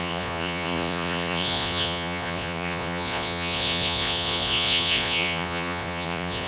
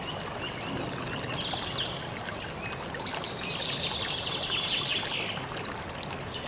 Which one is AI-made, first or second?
first